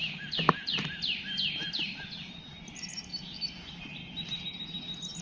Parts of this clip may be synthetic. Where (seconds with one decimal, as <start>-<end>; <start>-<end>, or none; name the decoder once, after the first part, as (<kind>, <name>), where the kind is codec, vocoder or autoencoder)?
none